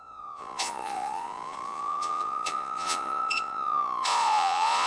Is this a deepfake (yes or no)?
yes